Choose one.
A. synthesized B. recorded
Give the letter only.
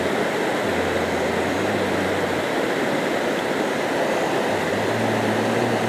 B